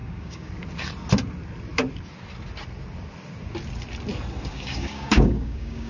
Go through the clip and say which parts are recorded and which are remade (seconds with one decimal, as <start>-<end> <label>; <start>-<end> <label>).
0.0-0.5 remade; 0.5-4.5 recorded; 4.5-5.9 remade

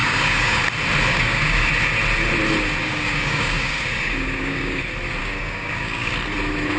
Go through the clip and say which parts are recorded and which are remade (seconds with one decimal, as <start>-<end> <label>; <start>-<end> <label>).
0.0-0.6 remade; 0.6-1.1 recorded; 1.1-1.7 remade; 1.7-2.8 recorded; 2.8-4.8 remade; 4.8-5.2 recorded; 5.2-6.1 remade; 6.1-6.8 recorded

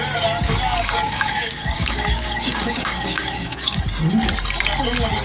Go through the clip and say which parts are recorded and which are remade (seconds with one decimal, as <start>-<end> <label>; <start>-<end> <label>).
0.0-0.7 recorded; 0.7-3.8 remade; 3.8-5.2 recorded

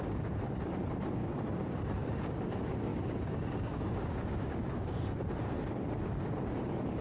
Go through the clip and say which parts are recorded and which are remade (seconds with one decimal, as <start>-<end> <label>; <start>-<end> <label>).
0.0-1.2 recorded; 1.2-2.1 remade; 2.1-2.9 recorded; 2.9-5.2 remade; 5.2-7.0 recorded

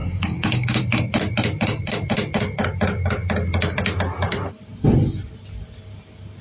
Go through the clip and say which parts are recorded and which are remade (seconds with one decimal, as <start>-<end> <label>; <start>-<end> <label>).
0.0-0.8 remade; 0.8-6.4 recorded

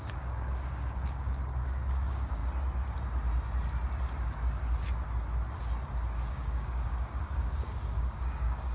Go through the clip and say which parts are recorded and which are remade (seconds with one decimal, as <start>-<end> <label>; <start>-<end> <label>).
0.0-2.4 remade; 2.4-6.3 recorded; 6.3-8.7 remade